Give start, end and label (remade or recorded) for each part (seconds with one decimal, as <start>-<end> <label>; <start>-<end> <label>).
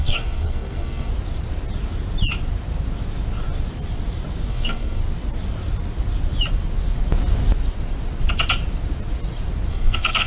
0.0-1.1 remade; 1.1-4.5 recorded; 4.5-5.0 remade; 5.0-9.7 recorded; 9.7-10.3 remade